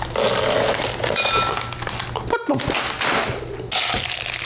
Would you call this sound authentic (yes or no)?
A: yes